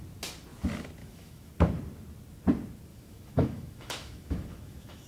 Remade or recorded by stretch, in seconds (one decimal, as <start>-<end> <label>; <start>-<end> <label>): 0.0-1.0 recorded; 1.0-1.5 remade; 1.5-2.9 recorded; 2.9-5.1 remade